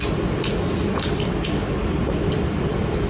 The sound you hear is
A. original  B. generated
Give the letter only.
A